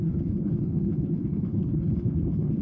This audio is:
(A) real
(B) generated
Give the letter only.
B